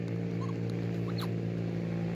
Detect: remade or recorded recorded